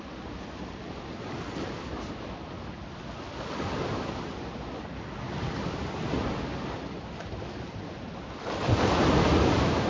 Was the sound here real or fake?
real